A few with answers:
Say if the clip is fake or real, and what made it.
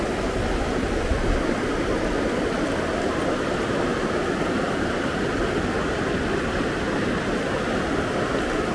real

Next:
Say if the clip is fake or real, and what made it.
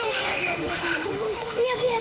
fake, autoencoder, DAC-VAE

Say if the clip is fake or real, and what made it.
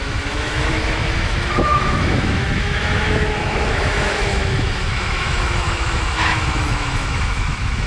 fake, autoencoder, DAC-VAE